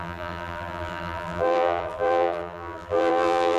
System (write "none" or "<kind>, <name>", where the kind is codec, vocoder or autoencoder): vocoder, BigVGAN v2